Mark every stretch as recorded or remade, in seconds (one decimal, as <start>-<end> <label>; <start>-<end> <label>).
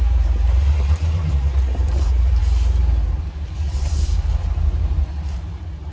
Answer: 0.0-2.4 remade; 2.4-3.2 recorded; 3.2-5.9 remade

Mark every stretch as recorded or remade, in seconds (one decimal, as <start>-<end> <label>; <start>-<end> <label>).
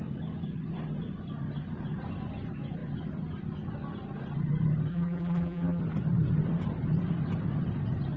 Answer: 0.0-4.9 recorded; 4.9-5.8 remade; 5.8-8.2 recorded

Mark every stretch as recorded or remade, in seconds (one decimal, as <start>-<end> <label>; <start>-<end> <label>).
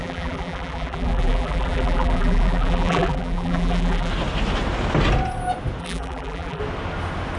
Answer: 0.0-4.1 remade; 4.1-5.8 recorded; 5.8-6.6 remade; 6.6-7.4 recorded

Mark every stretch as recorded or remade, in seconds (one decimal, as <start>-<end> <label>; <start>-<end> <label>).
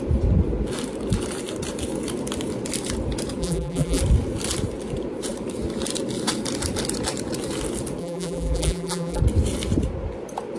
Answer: 0.0-3.4 recorded; 3.4-4.0 remade; 4.0-8.0 recorded; 8.0-9.2 remade; 9.2-10.6 recorded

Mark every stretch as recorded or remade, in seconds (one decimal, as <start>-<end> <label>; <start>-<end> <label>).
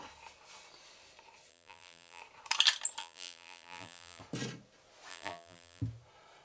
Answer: 0.0-1.5 recorded; 1.5-2.2 remade; 2.2-3.0 recorded; 3.0-4.2 remade; 4.2-5.1 recorded; 5.1-5.8 remade; 5.8-6.4 recorded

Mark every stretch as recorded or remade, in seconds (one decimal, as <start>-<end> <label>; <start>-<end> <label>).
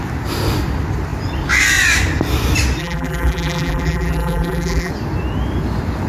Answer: 0.0-2.8 recorded; 2.8-4.9 remade; 4.9-6.1 recorded